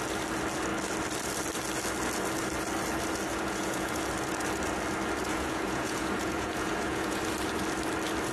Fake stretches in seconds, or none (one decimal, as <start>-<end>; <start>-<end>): 3.3-4.0; 5.3-7.2